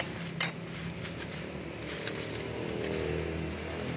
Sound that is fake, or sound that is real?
real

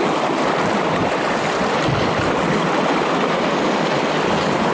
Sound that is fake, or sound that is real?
real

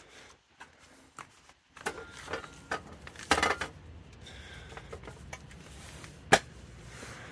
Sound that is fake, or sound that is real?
real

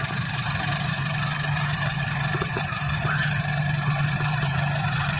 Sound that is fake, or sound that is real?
fake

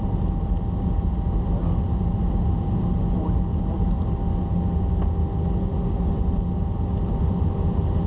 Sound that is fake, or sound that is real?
real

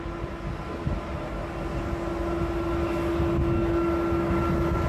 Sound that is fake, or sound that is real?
real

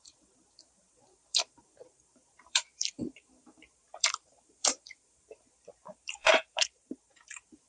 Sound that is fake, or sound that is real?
fake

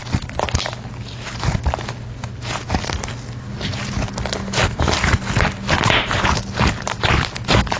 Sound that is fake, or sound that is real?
real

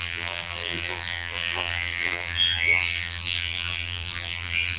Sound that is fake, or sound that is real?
fake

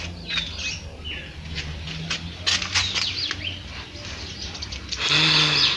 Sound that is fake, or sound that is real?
real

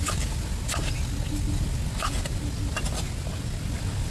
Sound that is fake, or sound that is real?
real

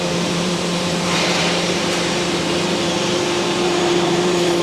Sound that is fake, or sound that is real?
fake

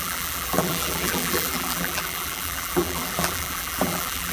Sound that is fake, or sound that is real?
fake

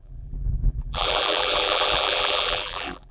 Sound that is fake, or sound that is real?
fake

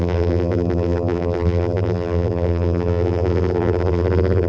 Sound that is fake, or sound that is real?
fake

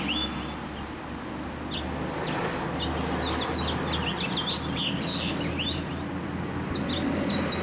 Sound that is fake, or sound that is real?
real